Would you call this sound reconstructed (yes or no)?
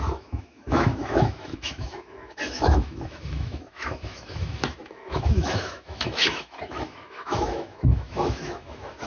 yes